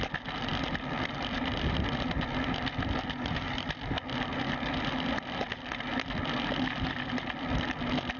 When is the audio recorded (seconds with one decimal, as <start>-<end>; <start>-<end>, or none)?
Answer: 0.0-8.2